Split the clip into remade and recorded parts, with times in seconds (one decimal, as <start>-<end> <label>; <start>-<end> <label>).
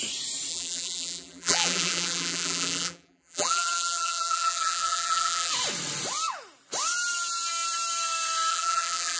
0.0-0.5 recorded; 0.5-5.5 remade; 5.5-8.5 recorded; 8.5-9.2 remade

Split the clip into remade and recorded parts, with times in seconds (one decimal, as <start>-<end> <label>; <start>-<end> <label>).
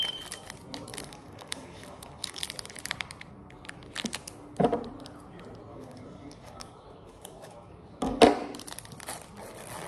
0.0-0.9 recorded; 0.9-2.4 remade; 2.4-5.7 recorded; 5.7-8.2 remade; 8.2-9.9 recorded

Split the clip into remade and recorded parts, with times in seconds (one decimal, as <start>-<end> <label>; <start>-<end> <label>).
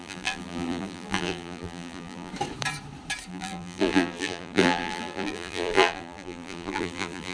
0.0-2.3 remade; 2.3-3.3 recorded; 3.3-7.3 remade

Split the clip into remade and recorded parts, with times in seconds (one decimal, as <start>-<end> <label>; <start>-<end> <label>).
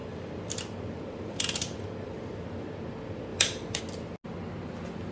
0.0-2.7 remade; 2.7-3.3 recorded; 3.3-3.8 remade; 3.8-5.1 recorded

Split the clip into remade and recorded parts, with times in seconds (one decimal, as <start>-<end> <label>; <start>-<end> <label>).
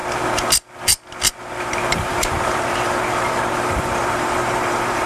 0.0-1.6 recorded; 1.6-5.1 remade